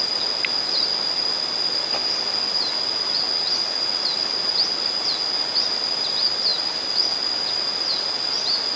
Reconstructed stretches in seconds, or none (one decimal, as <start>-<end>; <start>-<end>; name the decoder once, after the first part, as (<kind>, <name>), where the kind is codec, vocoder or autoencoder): none